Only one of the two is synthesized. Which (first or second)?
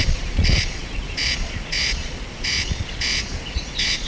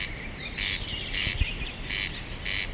first